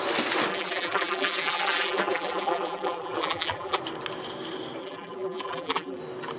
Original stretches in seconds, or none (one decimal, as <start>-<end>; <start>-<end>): 0.0-0.5; 3.8-4.8; 6.0-6.4